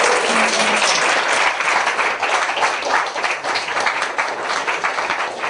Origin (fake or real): real